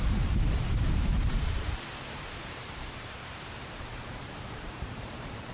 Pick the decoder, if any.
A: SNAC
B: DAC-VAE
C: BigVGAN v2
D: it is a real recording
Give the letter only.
C